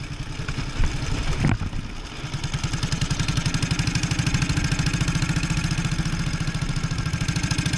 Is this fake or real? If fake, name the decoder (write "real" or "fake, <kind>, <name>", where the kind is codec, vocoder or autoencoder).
real